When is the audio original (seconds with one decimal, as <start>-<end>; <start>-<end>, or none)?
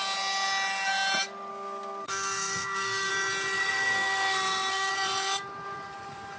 0.0-1.5; 3.1-3.6; 4.9-6.4